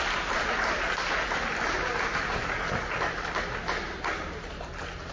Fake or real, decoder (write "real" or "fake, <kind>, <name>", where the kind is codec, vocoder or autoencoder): real